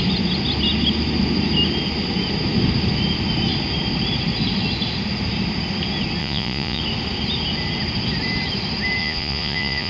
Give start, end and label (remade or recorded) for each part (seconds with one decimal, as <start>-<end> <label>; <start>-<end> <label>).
0.0-6.2 recorded; 6.2-6.8 remade; 6.8-9.0 recorded; 9.0-9.9 remade